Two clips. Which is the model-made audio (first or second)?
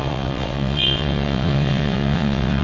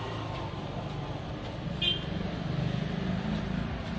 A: first